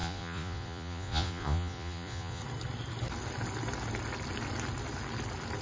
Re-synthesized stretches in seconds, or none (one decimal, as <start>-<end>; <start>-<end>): 0.0-2.4